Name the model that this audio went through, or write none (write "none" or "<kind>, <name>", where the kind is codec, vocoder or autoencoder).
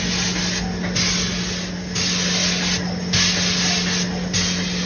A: none